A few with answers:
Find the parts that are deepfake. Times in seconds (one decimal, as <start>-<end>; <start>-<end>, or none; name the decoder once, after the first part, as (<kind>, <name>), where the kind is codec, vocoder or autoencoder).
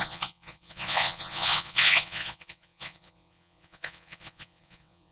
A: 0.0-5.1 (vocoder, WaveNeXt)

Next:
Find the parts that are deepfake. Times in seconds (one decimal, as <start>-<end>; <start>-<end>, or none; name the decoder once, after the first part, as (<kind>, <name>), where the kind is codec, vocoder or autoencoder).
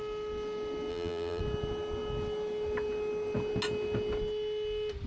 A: 0.9-1.4 (vocoder, BigVGAN v2)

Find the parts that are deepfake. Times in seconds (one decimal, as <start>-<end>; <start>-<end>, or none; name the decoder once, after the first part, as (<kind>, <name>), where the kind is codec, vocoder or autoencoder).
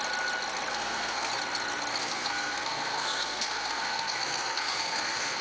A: 0.7-1.3 (codec, SNAC); 2.0-5.4